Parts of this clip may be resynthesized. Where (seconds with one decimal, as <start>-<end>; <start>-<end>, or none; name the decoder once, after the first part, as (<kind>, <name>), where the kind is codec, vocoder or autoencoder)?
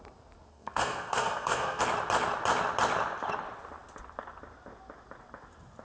0.5-1.8 (codec, SNAC)